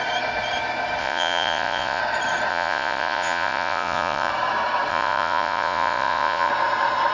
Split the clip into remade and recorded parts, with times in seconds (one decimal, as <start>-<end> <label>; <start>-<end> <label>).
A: 0.0-1.0 recorded; 1.0-2.0 remade; 2.0-2.5 recorded; 2.5-4.3 remade; 4.3-4.9 recorded; 4.9-6.5 remade; 6.5-7.1 recorded